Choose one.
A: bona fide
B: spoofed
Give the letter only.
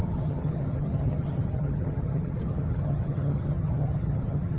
B